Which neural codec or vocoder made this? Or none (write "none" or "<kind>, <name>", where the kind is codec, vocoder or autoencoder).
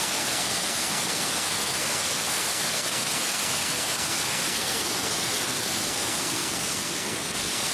codec, SNAC